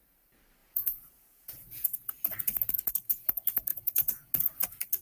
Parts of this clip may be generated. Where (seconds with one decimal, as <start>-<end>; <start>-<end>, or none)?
0.6-2.2; 3.7-4.3